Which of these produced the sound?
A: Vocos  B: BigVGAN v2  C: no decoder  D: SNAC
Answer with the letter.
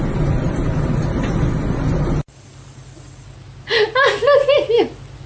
C